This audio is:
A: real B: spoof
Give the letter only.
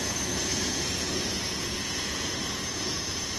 B